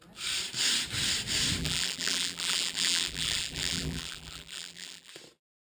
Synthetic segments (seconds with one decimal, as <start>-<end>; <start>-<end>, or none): 1.6-5.1